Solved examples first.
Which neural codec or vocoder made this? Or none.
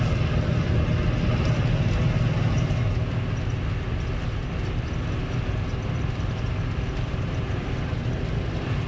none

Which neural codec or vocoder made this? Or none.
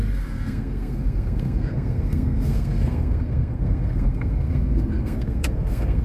codec, SNAC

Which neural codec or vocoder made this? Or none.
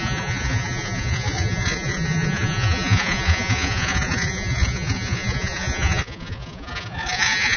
vocoder, Vocos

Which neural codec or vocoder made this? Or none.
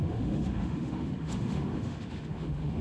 autoencoder, DAC-VAE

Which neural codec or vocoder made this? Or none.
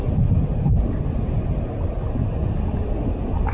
none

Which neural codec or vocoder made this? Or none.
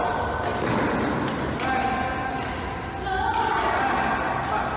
none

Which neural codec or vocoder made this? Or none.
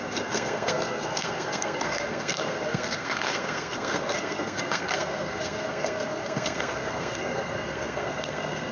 codec, SNAC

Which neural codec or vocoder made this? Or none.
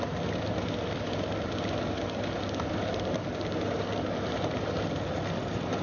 none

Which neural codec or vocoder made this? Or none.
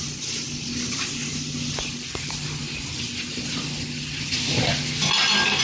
none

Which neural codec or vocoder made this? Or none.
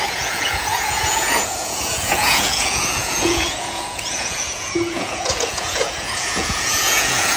vocoder, Vocos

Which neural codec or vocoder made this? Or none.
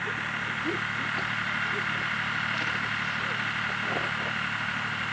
none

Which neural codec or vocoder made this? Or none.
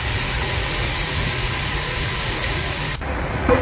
vocoder, Vocos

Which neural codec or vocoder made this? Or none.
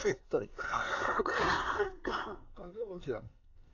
codec, SNAC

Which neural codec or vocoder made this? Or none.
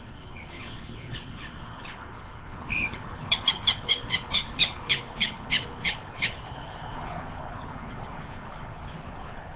codec, HILCodec